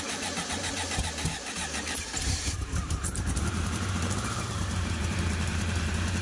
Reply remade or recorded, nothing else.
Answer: remade